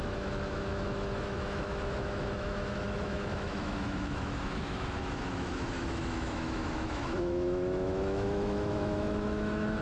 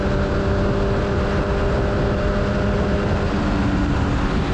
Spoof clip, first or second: first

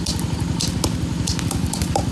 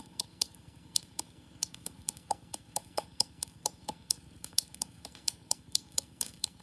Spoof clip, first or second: second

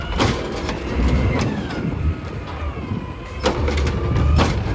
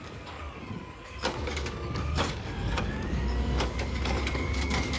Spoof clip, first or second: second